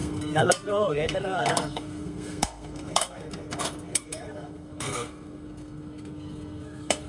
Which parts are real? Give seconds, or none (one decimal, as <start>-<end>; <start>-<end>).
none